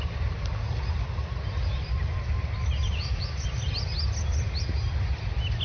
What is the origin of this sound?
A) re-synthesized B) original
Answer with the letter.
B